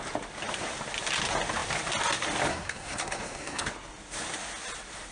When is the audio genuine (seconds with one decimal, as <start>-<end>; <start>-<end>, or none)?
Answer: 0.0-2.5; 3.7-5.1